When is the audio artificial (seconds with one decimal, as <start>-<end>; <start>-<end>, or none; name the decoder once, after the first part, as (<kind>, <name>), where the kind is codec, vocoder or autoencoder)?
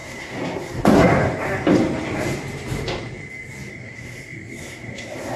0.0-1.1 (codec, SNAC); 3.7-5.4